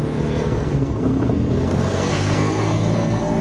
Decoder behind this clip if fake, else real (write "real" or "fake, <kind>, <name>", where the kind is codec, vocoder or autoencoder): fake, codec, SNAC